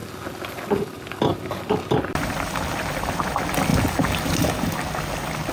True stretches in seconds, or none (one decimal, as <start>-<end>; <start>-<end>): 0.0-1.3; 3.3-5.5